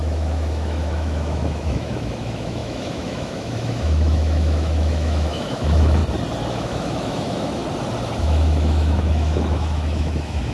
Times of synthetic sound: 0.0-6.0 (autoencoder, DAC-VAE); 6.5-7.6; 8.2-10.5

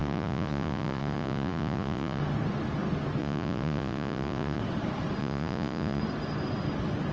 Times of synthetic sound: 0.0-2.2 (vocoder, Vocos); 3.2-4.6; 5.2-6.0